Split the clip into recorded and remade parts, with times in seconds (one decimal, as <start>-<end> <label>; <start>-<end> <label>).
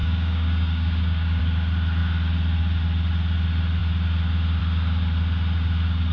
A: 0.0-1.4 remade; 1.4-6.1 recorded